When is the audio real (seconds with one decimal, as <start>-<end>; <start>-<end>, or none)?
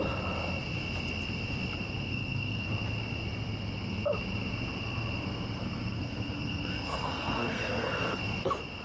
0.0-2.1; 2.7-5.6; 8.2-8.8